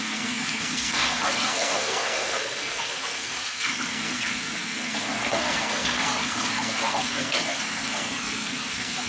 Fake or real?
fake